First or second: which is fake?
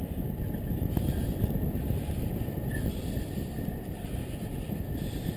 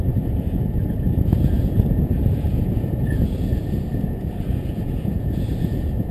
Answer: second